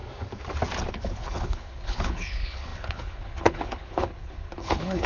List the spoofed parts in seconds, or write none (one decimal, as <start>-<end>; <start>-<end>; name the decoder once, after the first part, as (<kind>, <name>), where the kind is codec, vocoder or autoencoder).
0.9-5.1 (codec, HILCodec)